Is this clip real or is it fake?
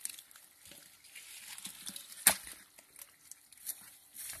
real